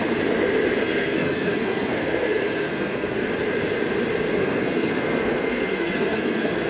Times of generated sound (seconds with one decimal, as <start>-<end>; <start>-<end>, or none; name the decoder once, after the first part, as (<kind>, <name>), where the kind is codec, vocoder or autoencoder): 0.8-3.3 (codec, SNAC); 4.4-6.7

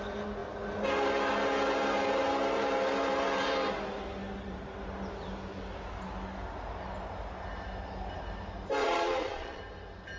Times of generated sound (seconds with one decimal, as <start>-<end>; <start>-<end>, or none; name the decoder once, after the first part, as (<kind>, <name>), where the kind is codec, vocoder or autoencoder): 8.8-9.6 (vocoder, Vocos)

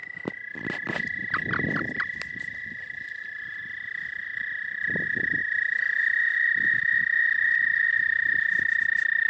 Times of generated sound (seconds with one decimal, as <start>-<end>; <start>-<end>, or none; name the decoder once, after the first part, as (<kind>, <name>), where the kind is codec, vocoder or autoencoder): none

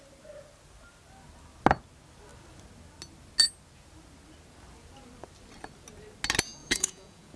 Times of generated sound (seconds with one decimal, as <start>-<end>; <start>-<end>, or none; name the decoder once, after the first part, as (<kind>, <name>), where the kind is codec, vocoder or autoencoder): 6.6-7.4 (vocoder, Vocos)

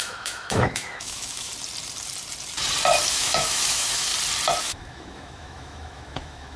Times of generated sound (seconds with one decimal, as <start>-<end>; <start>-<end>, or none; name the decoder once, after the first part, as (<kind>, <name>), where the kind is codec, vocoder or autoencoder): 0.0-1.5 (autoencoder, DAC-VAE); 3.1-4.1; 4.6-6.6